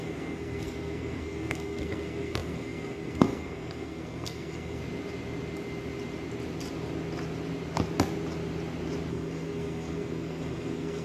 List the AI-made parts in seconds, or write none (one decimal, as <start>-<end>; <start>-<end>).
0.0-4.8; 9.1-11.0